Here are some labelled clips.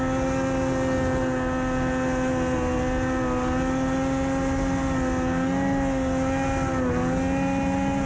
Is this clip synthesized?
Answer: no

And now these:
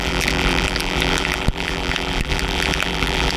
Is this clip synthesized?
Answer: yes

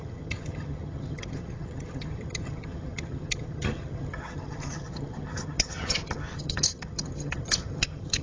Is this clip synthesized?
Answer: yes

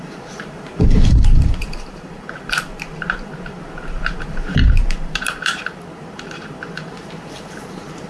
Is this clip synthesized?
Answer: yes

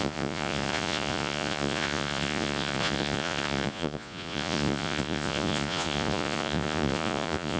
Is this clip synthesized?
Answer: yes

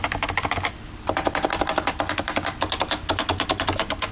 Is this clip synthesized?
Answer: no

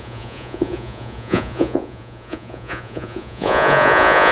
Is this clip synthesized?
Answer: yes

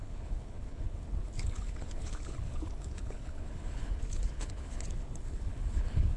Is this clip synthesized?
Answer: yes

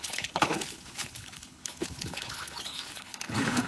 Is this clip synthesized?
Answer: yes